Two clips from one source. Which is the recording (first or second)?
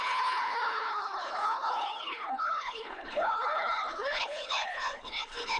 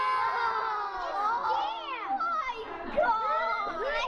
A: second